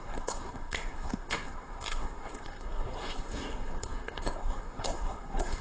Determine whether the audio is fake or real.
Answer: fake